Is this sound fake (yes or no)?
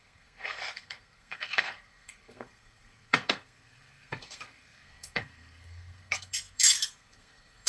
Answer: yes